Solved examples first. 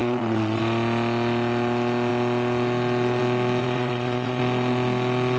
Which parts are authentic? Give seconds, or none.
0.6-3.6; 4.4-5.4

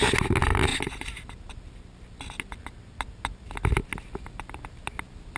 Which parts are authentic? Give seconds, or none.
0.0-5.4

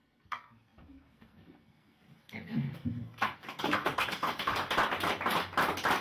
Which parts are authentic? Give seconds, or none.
4.5-6.0